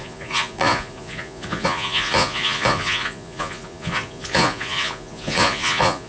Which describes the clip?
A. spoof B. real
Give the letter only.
A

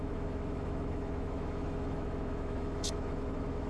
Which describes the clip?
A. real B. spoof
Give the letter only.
B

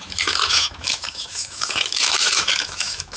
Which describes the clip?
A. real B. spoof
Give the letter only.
B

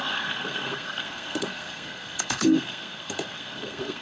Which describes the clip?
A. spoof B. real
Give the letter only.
A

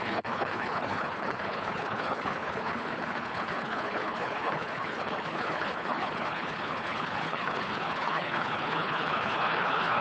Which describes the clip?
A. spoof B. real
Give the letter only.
A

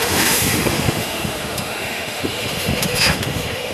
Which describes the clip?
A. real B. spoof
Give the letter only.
B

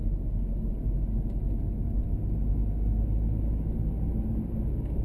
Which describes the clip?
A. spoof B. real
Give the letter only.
B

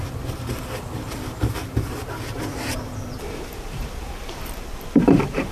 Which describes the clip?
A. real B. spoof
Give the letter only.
B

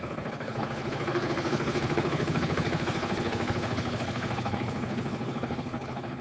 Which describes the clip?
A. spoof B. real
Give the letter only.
A